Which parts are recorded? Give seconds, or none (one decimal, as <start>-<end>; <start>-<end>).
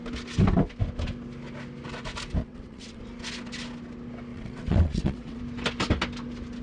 0.0-2.4; 3.0-4.3; 5.4-6.6